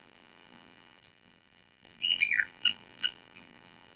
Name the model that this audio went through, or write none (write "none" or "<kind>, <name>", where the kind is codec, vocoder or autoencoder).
vocoder, BigVGAN v2